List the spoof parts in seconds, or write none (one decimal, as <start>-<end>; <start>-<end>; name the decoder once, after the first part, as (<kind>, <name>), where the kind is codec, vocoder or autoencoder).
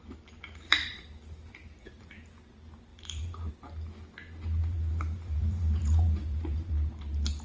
0.0-2.0 (vocoder, BigVGAN v2); 2.9-3.5; 4.6-6.7